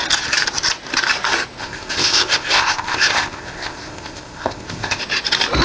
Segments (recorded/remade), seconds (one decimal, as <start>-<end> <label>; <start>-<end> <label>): 0.0-1.6 recorded; 1.6-5.0 remade; 5.0-5.6 recorded